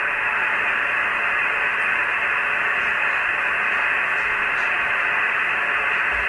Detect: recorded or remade recorded